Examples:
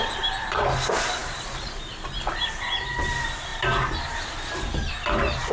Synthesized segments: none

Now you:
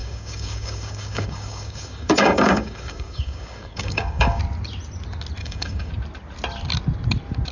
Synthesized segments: 0.0-4.4 (codec, DAC); 5.4-5.9

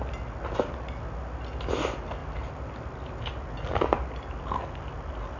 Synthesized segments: none

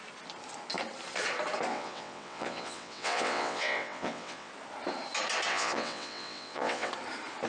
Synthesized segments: 1.7-4.5 (vocoder, WaveNeXt); 5.5-6.9

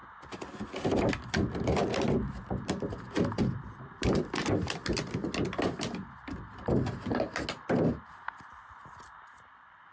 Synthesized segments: 1.1-5.2 (vocoder, BigVGAN v2); 7.9-9.9